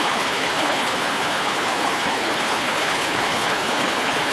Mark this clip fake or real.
fake